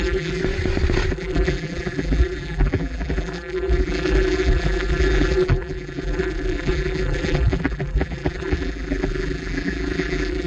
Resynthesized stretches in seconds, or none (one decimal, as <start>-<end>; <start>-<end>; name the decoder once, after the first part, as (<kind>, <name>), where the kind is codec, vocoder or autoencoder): 0.0-0.4 (vocoder, BigVGAN v2); 1.1-10.5